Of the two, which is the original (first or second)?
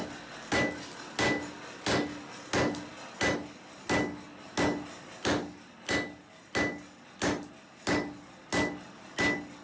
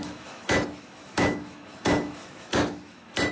first